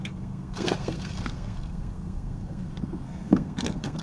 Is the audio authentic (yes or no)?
no